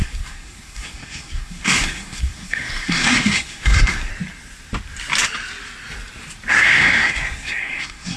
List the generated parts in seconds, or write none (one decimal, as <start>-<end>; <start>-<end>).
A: 0.0-4.1; 6.5-8.2